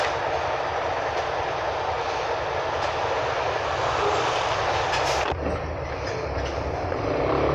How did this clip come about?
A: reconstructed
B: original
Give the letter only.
B